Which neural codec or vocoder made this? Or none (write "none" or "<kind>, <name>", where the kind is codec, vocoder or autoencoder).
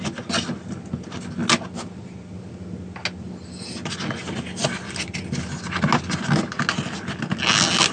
none